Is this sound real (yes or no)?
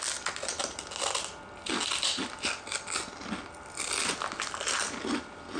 yes